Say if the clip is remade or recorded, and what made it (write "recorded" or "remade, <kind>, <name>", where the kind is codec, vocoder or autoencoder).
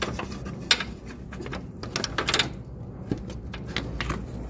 recorded